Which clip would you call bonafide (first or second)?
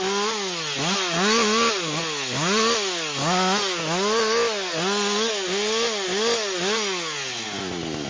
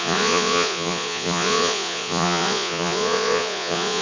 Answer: first